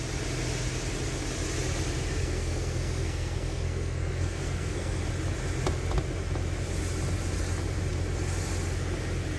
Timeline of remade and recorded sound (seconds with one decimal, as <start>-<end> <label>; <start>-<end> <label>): 0.0-2.2 recorded; 2.2-5.0 remade; 5.0-9.4 recorded